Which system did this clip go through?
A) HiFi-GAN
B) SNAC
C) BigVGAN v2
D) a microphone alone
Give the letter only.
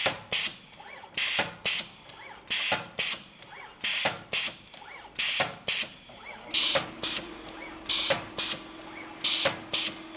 D